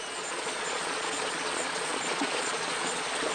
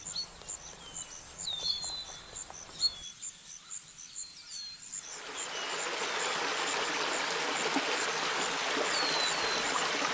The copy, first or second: first